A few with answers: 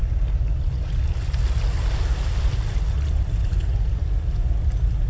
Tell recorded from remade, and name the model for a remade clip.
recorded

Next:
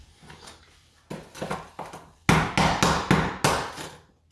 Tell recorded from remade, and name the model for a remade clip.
recorded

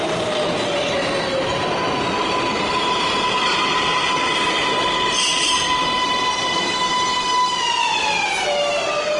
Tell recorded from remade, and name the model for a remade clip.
recorded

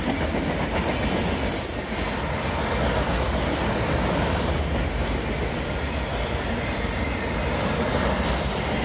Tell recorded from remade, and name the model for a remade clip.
recorded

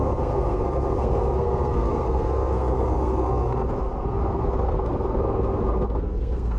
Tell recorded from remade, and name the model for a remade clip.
remade, codec, SNAC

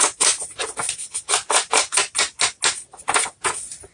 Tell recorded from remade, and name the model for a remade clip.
recorded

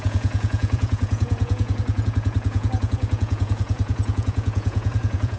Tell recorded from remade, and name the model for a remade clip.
remade, vocoder, Vocos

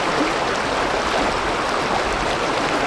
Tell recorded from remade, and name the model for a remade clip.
recorded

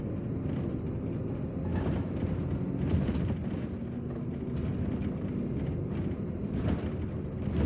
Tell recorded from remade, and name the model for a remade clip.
recorded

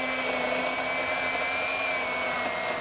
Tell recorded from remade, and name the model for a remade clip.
recorded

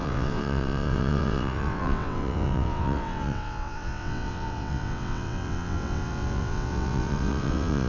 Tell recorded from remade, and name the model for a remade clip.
remade, vocoder, WaveNeXt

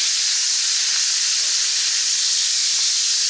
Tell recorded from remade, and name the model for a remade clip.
recorded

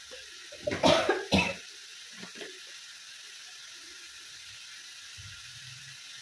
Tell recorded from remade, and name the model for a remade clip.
recorded